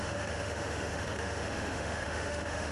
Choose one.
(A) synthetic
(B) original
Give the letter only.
A